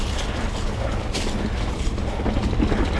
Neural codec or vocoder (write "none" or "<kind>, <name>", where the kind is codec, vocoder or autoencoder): none